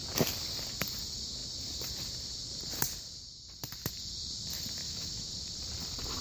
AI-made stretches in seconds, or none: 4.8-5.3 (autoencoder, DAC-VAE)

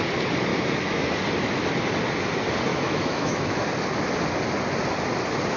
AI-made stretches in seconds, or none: 0.5-1.1 (autoencoder, DAC-VAE); 2.7-3.6

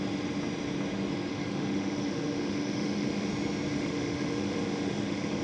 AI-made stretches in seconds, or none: 1.3-3.3 (autoencoder, DAC-VAE); 3.7-5.4

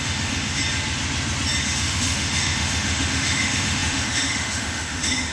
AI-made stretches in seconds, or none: 0.0-0.6 (autoencoder, DAC-VAE); 1.6-5.3

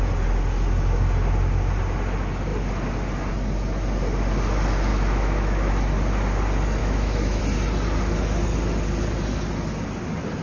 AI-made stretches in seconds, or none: 4.9-5.7 (autoencoder, DAC-VAE); 6.8-7.4

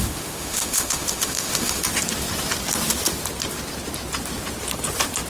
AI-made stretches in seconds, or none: 0.0-1.8 (autoencoder, DAC-VAE)